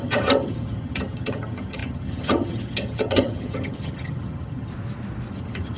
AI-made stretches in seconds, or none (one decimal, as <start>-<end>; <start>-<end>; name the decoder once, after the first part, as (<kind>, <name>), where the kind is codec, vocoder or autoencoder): 0.0-4.7 (vocoder, HiFi-GAN); 5.3-5.8